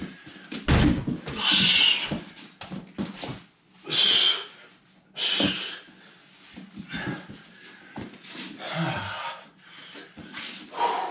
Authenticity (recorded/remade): recorded